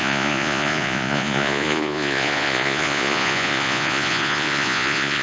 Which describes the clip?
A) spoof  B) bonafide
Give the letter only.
A